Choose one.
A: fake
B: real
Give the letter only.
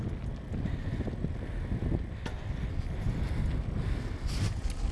B